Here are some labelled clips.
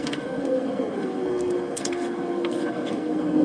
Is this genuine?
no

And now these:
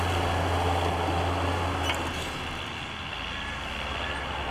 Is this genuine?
yes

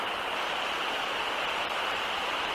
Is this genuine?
yes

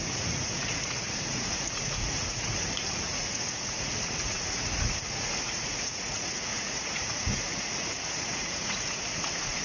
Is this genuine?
no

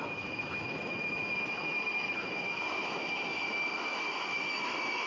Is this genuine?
no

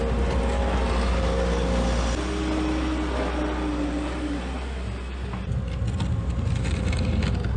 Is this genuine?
yes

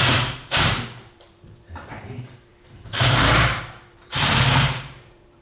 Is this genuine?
no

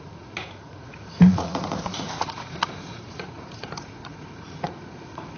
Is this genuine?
no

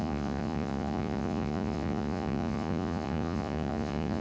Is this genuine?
no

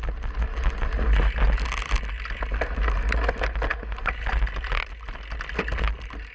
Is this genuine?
yes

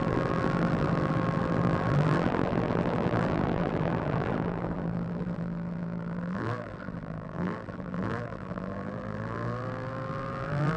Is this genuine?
no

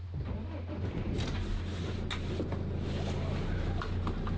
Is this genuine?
yes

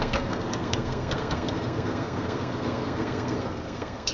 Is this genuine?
no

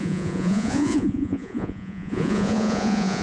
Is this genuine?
no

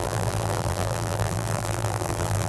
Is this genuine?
no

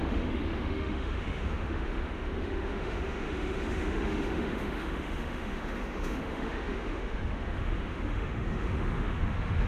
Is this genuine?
no